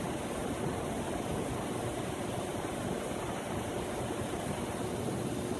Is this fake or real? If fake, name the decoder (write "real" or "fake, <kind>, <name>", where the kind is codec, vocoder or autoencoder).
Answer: real